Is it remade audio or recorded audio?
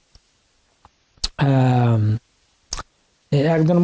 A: recorded